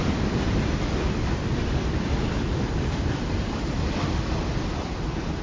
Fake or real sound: fake